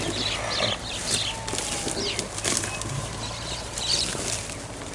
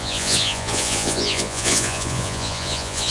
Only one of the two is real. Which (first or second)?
first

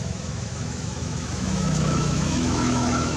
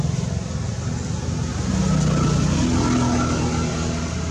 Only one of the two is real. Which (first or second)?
second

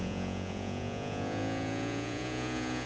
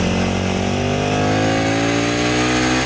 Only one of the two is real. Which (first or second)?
second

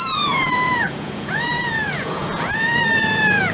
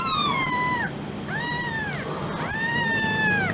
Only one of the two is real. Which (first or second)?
second